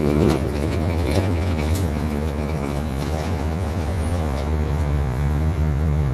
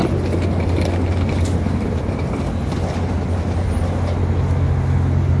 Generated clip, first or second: first